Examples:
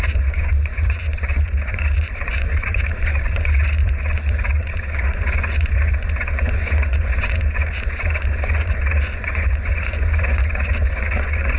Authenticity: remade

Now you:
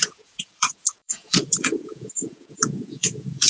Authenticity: remade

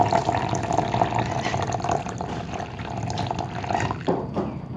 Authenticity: recorded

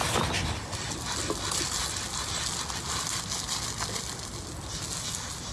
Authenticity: recorded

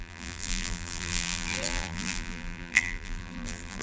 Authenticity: remade